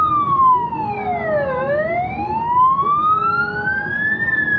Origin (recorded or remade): recorded